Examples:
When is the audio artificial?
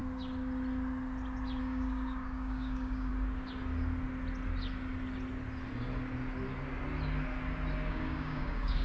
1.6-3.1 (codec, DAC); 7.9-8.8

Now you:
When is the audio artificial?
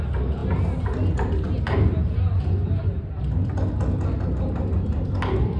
none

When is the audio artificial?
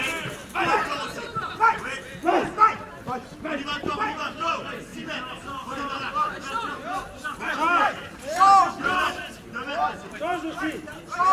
0.0-0.4 (vocoder, BigVGAN v2); 2.9-11.3